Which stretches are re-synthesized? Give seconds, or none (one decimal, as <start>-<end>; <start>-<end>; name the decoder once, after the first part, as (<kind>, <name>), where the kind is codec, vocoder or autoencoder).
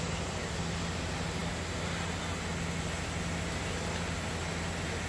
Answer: none